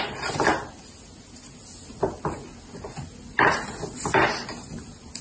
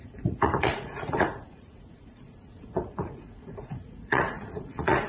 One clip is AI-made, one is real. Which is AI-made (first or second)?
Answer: second